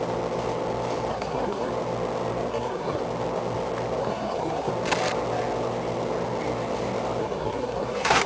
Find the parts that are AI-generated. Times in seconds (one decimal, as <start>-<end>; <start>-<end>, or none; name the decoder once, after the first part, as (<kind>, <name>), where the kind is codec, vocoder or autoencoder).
1.1-1.7 (codec, SNAC); 2.5-3.0; 4.0-4.7; 7.2-8.3